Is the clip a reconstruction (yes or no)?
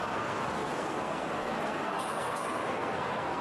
yes